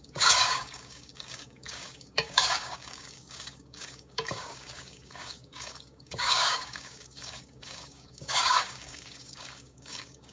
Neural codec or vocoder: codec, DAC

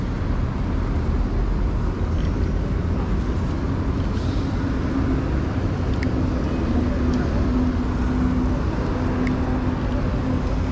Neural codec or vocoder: none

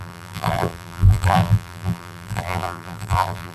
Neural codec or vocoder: vocoder, BigVGAN v2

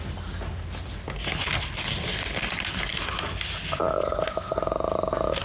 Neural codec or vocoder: none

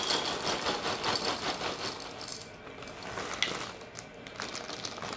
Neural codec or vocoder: none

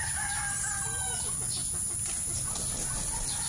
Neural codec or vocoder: none